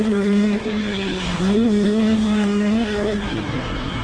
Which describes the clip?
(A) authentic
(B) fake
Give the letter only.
B